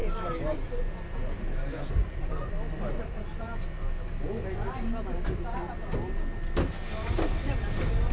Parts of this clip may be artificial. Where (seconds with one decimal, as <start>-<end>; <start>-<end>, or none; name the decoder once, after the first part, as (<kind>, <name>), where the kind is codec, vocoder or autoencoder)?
0.0-2.5 (vocoder, BigVGAN v2)